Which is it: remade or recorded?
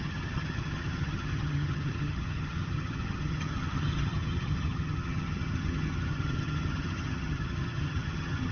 remade